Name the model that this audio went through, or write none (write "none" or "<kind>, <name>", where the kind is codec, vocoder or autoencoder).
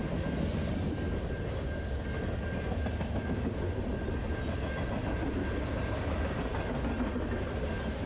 none